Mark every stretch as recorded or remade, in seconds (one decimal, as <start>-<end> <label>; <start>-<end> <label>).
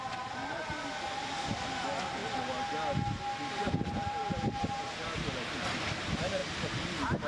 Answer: 0.0-7.3 recorded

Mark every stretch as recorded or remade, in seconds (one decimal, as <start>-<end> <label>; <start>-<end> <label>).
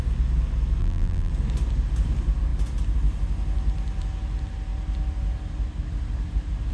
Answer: 0.0-0.8 recorded; 0.8-1.3 remade; 1.3-6.7 recorded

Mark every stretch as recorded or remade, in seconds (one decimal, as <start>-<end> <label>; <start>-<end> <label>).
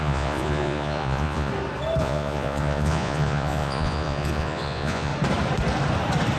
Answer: 0.0-1.5 remade; 1.5-2.0 recorded; 2.0-5.1 remade; 5.1-6.4 recorded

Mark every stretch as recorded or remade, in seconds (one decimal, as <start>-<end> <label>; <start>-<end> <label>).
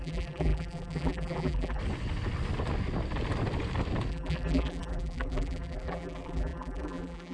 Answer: 0.0-1.8 remade; 1.8-4.1 recorded; 4.1-7.3 remade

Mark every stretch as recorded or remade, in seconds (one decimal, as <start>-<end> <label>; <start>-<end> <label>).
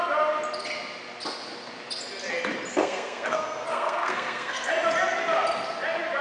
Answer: 0.0-2.7 recorded; 2.7-4.7 remade; 4.7-6.2 recorded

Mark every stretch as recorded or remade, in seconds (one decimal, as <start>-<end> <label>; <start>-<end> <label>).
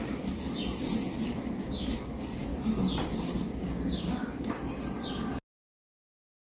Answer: 0.0-6.5 recorded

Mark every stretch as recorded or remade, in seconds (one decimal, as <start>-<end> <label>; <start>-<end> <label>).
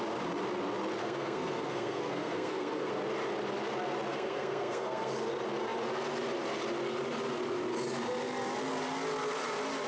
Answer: 0.0-1.0 recorded; 1.0-2.9 remade; 2.9-4.1 recorded; 4.1-5.1 remade; 5.1-9.9 recorded